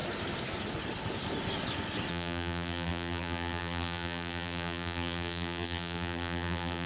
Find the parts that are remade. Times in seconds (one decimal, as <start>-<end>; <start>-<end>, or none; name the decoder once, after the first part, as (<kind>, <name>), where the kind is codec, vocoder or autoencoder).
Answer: 2.1-6.9 (vocoder, BigVGAN v2)